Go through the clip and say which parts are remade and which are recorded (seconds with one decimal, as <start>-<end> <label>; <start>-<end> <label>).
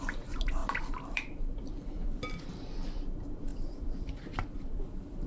0.0-0.6 recorded; 0.6-3.0 remade; 3.0-3.5 recorded; 3.5-5.3 remade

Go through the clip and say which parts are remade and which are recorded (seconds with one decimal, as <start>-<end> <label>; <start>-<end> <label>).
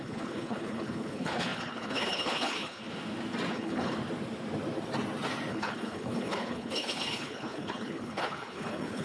0.0-2.8 remade; 2.8-3.5 recorded; 3.5-4.0 remade; 4.0-5.5 recorded; 5.5-9.0 remade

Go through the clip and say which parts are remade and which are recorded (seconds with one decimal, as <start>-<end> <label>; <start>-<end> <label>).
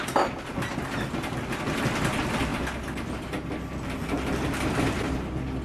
0.0-5.6 recorded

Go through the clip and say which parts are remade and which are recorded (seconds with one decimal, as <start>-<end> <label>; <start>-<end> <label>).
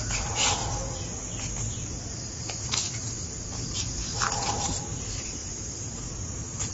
0.0-0.6 remade; 0.6-4.6 recorded; 4.6-6.7 remade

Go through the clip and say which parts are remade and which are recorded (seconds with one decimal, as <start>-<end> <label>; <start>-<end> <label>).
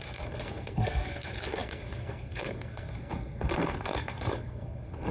0.0-5.1 remade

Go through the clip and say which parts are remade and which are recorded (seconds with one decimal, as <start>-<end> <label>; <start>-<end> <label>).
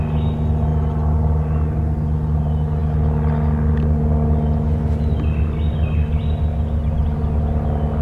0.0-8.0 recorded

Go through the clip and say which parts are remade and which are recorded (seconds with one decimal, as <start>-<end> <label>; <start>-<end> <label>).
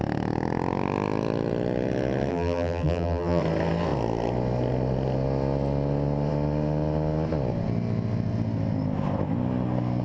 0.0-2.3 recorded; 2.3-3.4 remade; 3.4-10.0 recorded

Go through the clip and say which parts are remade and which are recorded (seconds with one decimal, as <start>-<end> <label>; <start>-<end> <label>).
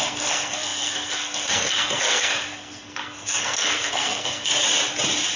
0.0-4.5 remade; 4.5-5.4 recorded